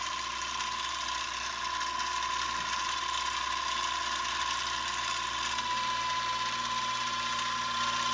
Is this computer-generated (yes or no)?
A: no